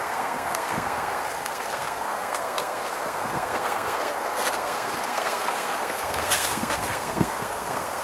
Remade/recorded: remade